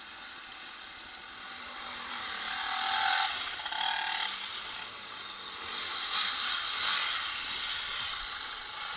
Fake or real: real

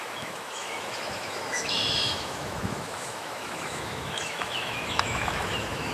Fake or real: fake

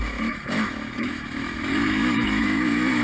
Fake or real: fake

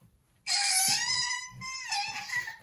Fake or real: real